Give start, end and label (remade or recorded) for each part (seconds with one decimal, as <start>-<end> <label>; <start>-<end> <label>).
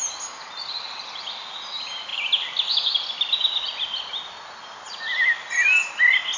0.0-6.4 recorded